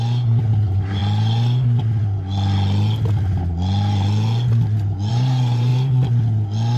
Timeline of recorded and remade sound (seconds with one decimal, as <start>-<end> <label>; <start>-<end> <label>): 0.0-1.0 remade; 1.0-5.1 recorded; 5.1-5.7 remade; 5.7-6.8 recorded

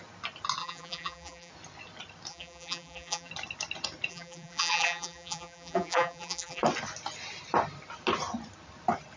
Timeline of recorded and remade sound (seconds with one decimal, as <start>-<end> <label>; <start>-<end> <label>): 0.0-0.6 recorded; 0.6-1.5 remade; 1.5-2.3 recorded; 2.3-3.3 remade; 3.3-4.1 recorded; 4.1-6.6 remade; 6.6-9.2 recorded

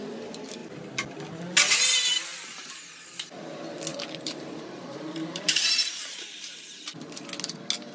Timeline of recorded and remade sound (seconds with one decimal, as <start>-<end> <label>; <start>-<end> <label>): 0.0-2.3 recorded; 2.3-2.9 remade; 2.9-3.9 recorded; 3.9-7.1 remade; 7.1-7.9 recorded

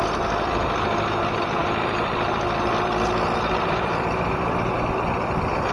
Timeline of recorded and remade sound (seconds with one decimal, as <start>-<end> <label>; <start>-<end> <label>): 0.0-1.6 recorded; 1.6-4.4 remade; 4.4-5.7 recorded

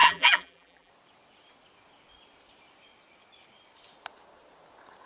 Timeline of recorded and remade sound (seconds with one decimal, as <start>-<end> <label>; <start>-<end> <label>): 0.0-0.9 remade; 0.9-5.1 recorded